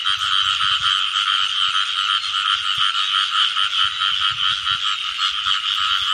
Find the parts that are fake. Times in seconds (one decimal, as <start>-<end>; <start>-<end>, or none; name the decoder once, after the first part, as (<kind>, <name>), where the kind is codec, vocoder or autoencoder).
none